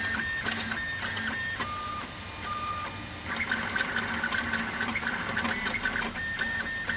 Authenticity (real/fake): real